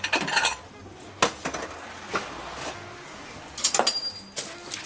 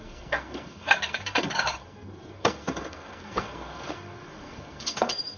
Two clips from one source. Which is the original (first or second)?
first